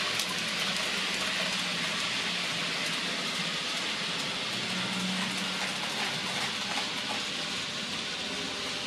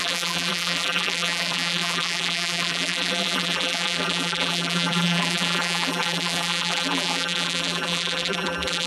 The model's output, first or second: second